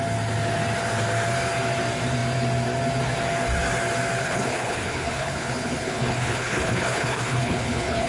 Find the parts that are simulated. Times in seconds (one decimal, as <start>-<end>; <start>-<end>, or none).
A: 4.2-8.1